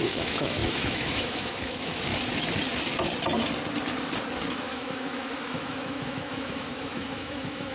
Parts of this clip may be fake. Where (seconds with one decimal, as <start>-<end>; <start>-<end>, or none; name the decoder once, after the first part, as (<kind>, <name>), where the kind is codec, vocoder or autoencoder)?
0.0-2.1 (autoencoder, DAC-VAE); 4.5-7.7